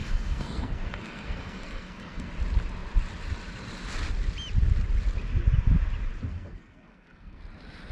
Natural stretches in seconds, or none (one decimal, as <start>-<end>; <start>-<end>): 2.3-6.3; 7.4-7.9